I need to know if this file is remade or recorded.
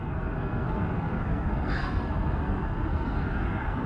remade